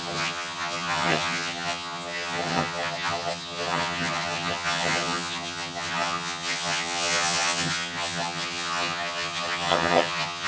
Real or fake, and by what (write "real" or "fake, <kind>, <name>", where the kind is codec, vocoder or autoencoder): fake, vocoder, HiFi-GAN